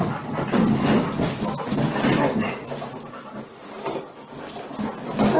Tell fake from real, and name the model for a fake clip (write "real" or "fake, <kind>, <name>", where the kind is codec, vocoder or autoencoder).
real